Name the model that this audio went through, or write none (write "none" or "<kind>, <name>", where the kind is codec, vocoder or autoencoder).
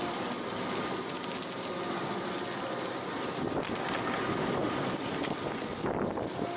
none